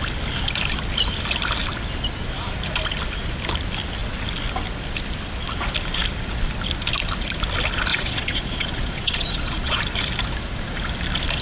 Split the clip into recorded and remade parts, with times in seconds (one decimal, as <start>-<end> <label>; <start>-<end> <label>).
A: 0.0-7.9 recorded; 7.9-9.8 remade; 9.8-11.4 recorded